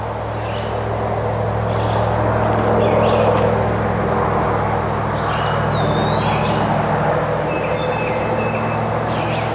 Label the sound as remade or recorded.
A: recorded